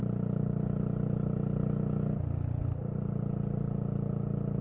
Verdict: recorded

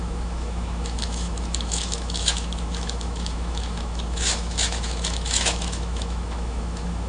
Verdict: remade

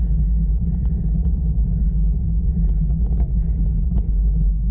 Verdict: recorded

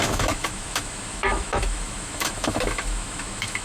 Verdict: remade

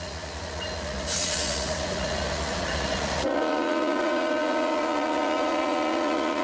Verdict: remade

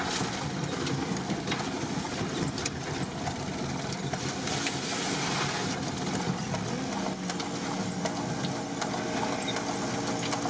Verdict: recorded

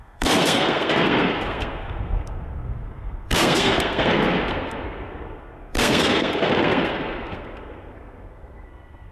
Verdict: remade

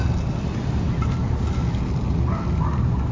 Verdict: recorded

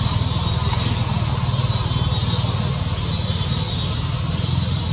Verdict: recorded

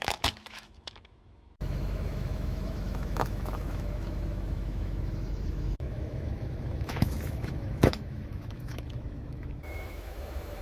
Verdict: remade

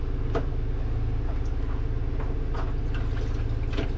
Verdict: recorded